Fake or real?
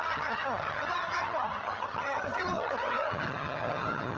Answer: fake